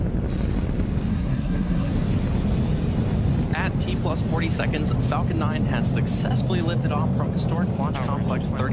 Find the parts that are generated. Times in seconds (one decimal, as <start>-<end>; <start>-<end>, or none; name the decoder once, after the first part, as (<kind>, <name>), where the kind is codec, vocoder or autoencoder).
1.1-1.9 (codec, SNAC)